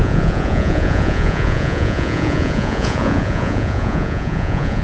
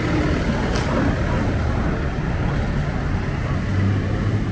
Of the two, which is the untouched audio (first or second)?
second